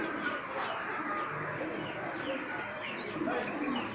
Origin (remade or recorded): recorded